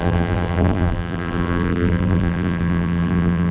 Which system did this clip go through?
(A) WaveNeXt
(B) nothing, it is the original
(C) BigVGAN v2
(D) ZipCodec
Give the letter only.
C